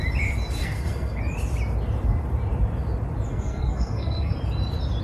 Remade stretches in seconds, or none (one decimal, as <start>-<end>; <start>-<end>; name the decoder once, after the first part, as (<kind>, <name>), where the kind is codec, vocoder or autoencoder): 0.6-1.2 (codec, SNAC); 3.3-4.3